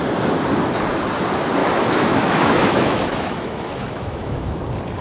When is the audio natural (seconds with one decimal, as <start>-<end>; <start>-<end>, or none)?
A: 0.0-1.6; 4.6-5.0